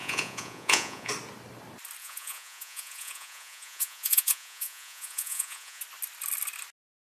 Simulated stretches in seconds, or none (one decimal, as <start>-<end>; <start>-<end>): 0.0-1.1; 2.0-5.8